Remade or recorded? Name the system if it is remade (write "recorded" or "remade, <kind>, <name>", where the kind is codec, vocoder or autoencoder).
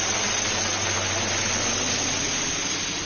recorded